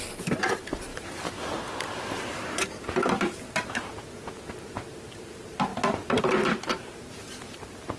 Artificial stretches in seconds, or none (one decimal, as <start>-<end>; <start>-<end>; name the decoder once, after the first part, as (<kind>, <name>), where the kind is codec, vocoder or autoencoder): 0.0-5.7 (vocoder, BigVGAN v2); 6.2-8.0